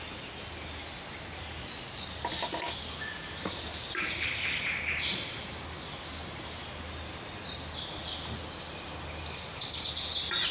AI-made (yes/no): no